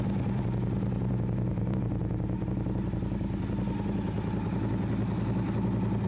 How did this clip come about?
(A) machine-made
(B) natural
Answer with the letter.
B